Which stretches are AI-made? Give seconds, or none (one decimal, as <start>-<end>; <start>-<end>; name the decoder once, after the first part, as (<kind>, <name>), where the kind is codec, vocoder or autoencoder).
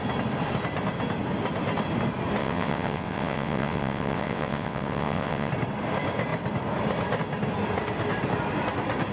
2.4-5.5 (vocoder, WaveNeXt)